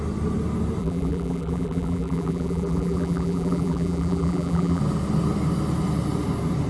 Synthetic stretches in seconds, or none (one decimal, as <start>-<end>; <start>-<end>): 0.8-4.8

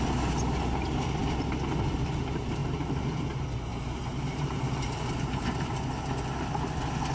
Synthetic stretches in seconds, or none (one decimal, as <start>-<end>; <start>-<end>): 2.6-3.3; 3.7-5.8

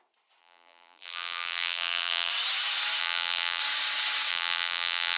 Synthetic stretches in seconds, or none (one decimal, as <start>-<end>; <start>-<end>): 0.4-2.3; 3.0-3.6; 4.3-5.2

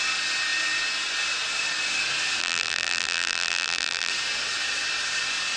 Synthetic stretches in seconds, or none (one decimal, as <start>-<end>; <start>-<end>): 2.4-4.1

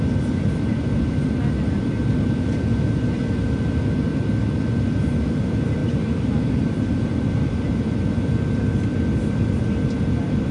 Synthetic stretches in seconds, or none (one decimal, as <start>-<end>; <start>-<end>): 4.1-4.7; 5.8-6.5; 8.9-9.6

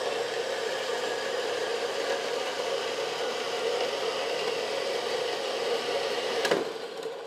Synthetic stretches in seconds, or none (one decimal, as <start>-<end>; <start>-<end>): 0.0-1.7; 6.1-7.3

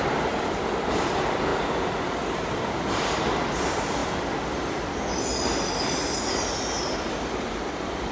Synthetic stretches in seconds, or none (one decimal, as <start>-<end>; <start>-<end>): 0.0-1.5; 2.7-4.0; 6.9-8.1

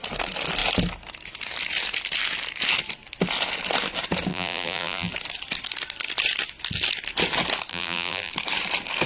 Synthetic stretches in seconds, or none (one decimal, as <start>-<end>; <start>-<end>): 4.3-5.1; 7.7-8.3